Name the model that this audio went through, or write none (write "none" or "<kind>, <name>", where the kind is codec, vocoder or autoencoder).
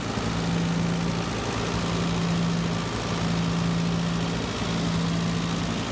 none